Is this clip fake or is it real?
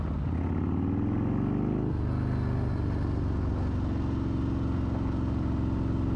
real